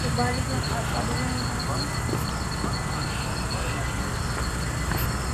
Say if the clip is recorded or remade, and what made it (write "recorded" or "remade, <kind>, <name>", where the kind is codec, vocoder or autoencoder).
recorded